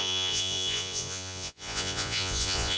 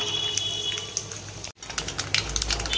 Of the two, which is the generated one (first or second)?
first